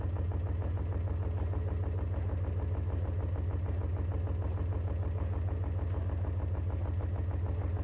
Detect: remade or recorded recorded